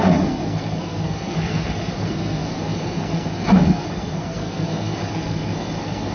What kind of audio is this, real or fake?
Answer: fake